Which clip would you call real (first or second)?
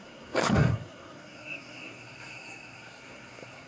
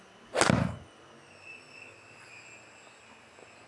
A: second